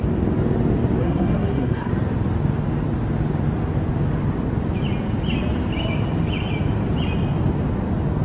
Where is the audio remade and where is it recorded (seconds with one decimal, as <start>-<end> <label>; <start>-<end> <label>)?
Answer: 0.0-1.0 recorded; 1.0-1.9 remade; 1.9-8.2 recorded